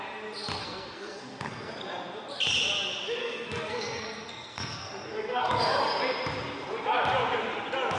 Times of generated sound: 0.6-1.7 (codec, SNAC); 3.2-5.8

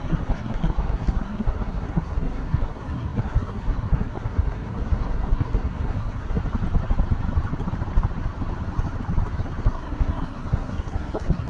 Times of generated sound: 0.0-6.4 (codec, SNAC); 9.6-11.5

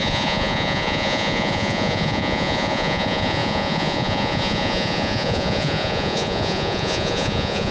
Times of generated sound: 0.0-7.7 (vocoder, Vocos)

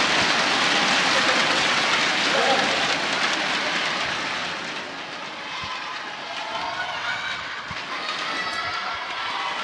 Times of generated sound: 1.4-1.9 (vocoder, WaveNeXt); 6.8-7.6

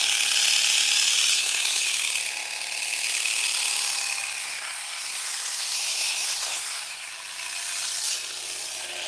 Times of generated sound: 1.3-1.9 (codec, SNAC); 4.4-7.1

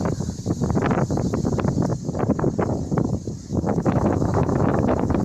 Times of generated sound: 3.5-5.2 (autoencoder, DAC-VAE)

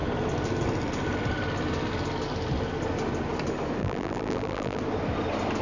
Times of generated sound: 3.8-4.8 (vocoder, BigVGAN v2)

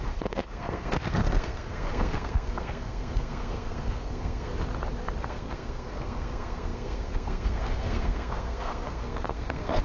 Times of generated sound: 0.0-4.5 (codec, SNAC); 5.2-9.8